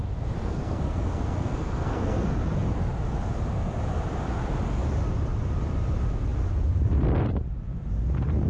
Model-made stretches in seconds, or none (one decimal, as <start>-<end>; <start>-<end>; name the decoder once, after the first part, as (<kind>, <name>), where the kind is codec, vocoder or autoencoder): 0.4-2.2 (codec, SNAC)